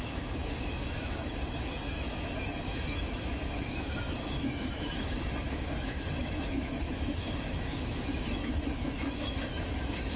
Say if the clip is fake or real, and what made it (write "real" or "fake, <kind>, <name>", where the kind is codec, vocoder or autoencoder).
fake, autoencoder, DAC-VAE